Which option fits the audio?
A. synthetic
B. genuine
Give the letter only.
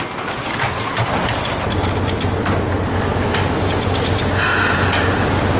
B